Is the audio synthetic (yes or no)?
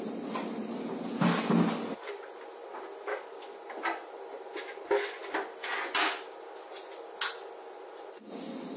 no